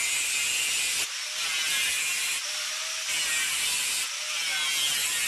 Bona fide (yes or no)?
yes